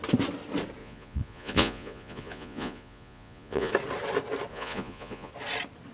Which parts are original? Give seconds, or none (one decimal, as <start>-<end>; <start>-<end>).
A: 0.0-0.8; 3.7-4.5; 5.3-5.9

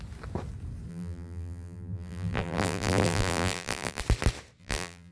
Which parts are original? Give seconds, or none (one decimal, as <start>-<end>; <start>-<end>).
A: 0.0-0.9; 4.0-4.6

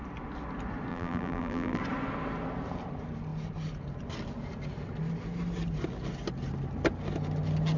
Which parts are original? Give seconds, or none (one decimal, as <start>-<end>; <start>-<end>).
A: 0.0-0.9; 1.8-7.8

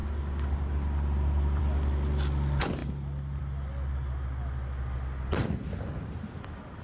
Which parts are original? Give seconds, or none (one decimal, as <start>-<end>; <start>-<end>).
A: 0.0-6.8

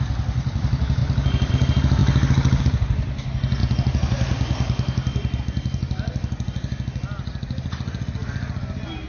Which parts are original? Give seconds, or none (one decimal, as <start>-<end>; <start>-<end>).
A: 0.0-9.1

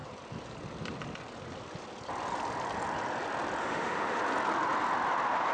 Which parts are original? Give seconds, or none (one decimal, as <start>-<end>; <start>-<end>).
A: 0.0-3.6; 4.2-5.5

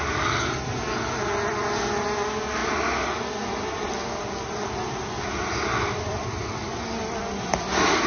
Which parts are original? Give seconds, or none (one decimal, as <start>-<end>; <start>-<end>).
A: 0.0-8.1